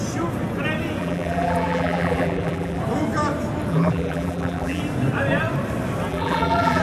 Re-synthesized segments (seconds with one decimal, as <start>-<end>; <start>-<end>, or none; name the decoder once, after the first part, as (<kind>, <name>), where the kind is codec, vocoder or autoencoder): 1.0-2.8 (vocoder, BigVGAN v2); 3.7-4.8; 6.1-6.8